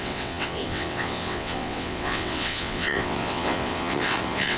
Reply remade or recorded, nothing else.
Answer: remade